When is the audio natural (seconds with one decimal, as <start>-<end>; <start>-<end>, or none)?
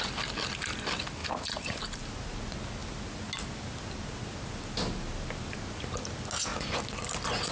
0.0-1.2; 2.0-7.5